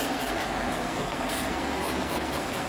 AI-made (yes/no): yes